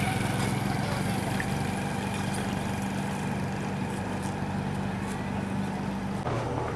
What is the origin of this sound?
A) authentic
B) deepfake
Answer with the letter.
A